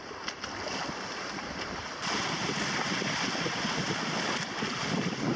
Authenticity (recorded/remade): recorded